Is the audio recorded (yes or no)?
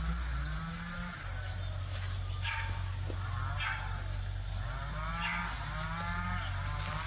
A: yes